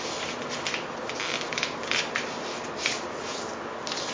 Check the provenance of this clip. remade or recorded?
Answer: recorded